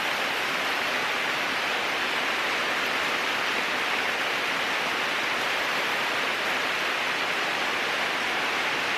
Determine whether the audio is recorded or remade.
remade